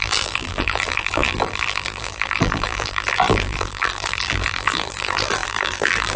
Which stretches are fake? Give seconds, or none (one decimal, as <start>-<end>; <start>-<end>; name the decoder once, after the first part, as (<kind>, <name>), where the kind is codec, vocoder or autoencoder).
0.0-6.2 (vocoder, BigVGAN v2)